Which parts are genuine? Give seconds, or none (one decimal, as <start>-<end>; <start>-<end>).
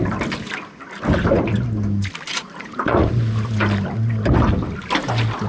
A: 0.0-2.3; 3.1-5.5